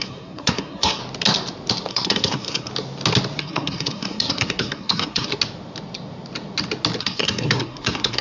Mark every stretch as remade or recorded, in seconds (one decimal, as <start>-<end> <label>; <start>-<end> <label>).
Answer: 0.0-1.0 remade; 1.0-1.9 recorded; 1.9-2.7 remade; 2.7-3.4 recorded; 3.4-5.3 remade; 5.3-7.0 recorded; 7.0-8.2 remade